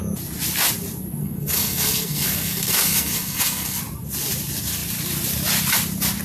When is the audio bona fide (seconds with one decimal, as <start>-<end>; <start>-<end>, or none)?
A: 0.0-1.2; 3.8-6.2